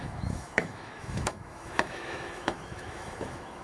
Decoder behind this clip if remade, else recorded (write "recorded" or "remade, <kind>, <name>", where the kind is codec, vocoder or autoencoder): remade, autoencoder, DAC-VAE